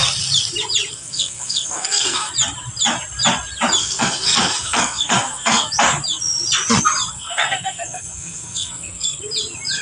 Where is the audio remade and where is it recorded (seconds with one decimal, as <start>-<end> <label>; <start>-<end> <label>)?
0.0-0.9 recorded; 0.9-2.3 remade; 2.3-3.8 recorded; 3.8-5.7 remade; 5.7-7.1 recorded; 7.1-9.2 remade; 9.2-9.8 recorded